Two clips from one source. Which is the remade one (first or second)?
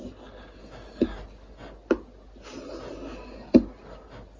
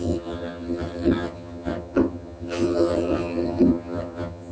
second